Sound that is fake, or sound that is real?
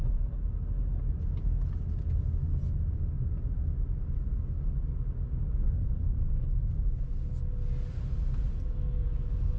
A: real